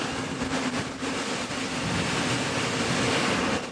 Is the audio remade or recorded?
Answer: recorded